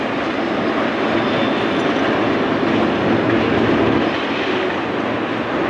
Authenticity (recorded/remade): recorded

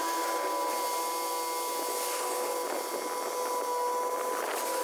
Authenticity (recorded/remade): recorded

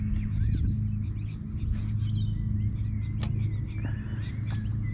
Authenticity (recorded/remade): recorded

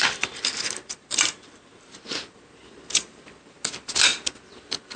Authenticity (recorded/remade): recorded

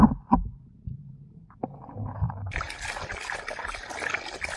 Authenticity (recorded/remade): recorded